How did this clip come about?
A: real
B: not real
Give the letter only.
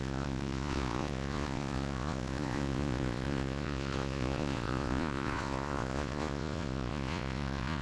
B